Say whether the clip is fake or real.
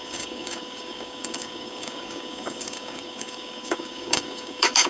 fake